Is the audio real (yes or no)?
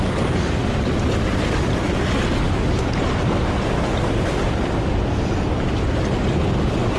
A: yes